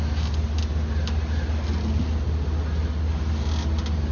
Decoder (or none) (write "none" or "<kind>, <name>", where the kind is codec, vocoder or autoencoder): none